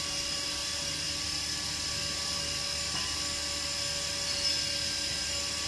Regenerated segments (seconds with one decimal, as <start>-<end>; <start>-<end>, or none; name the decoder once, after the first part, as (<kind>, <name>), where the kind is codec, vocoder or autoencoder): none